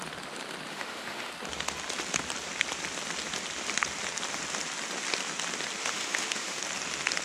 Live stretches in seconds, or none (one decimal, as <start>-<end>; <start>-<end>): 0.0-0.7; 1.3-5.8; 6.6-7.2